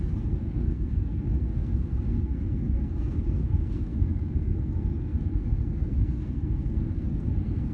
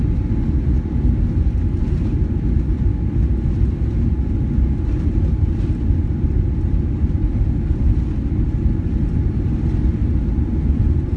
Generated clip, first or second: first